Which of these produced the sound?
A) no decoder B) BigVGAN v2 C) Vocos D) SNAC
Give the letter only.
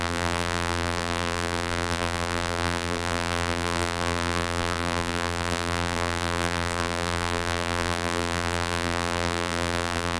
B